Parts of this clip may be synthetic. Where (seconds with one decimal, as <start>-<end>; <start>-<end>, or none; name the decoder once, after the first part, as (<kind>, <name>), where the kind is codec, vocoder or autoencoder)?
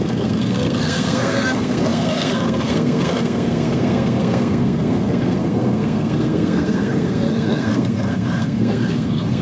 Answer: 0.0-9.4 (codec, SNAC)